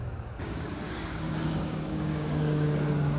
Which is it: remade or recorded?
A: remade